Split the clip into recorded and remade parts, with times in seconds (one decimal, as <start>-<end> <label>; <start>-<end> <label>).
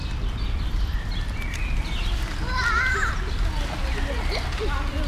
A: 0.0-5.1 recorded